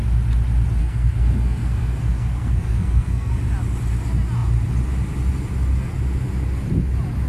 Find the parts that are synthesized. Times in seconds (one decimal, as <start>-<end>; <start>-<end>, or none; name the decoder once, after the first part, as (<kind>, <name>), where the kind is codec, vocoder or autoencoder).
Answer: 0.8-3.3 (codec, SNAC)